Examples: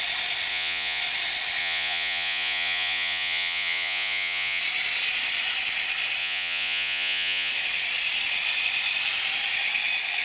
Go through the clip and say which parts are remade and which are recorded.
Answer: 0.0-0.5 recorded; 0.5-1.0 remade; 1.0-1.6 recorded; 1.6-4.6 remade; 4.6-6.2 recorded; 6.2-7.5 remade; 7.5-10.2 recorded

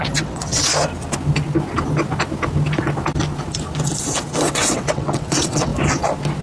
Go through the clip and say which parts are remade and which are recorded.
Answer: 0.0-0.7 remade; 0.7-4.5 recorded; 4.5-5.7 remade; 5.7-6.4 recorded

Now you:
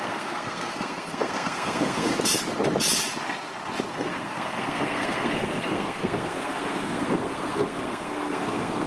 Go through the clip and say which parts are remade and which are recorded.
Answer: 0.0-2.1 remade; 2.1-3.9 recorded; 3.9-8.9 remade

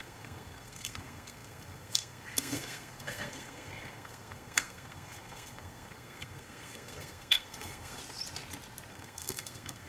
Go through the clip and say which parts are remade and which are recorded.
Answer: 0.0-8.0 remade; 8.0-8.9 recorded; 8.9-9.9 remade

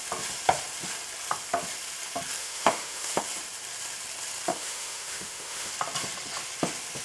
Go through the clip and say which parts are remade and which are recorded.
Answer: 0.0-2.4 recorded; 2.4-3.2 remade; 3.2-4.5 recorded; 4.5-5.7 remade; 5.7-7.0 recorded

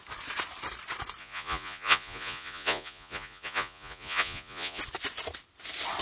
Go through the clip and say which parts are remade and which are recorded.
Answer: 0.0-1.2 recorded; 1.2-4.8 remade; 4.8-6.0 recorded